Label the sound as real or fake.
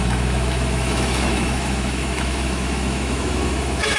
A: fake